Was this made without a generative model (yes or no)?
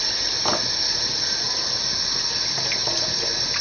yes